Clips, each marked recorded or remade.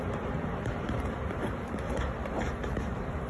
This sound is remade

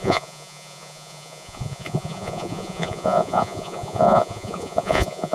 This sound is remade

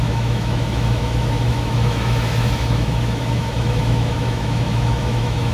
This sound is remade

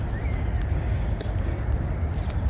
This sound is recorded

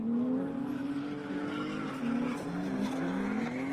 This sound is recorded